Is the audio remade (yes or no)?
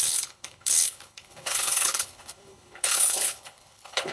yes